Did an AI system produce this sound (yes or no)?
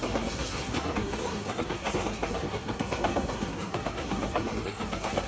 yes